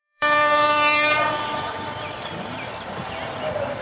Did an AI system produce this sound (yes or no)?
yes